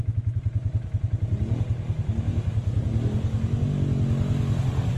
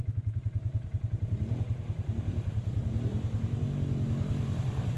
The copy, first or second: second